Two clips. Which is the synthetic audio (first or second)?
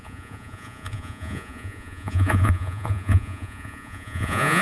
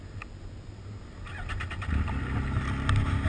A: first